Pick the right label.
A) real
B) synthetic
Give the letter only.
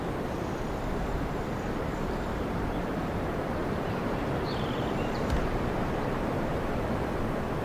B